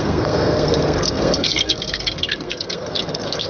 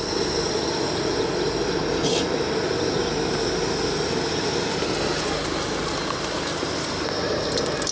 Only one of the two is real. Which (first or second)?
second